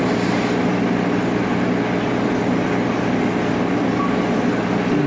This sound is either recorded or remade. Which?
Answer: recorded